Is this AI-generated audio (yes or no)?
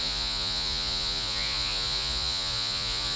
yes